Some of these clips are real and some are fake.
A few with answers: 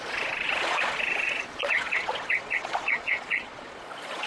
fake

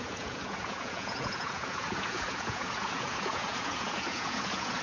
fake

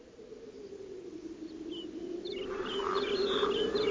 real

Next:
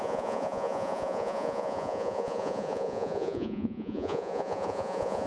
fake